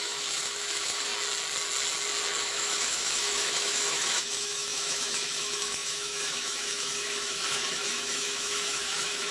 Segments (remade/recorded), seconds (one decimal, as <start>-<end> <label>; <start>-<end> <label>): 0.0-1.1 remade; 1.1-2.4 recorded; 2.4-9.3 remade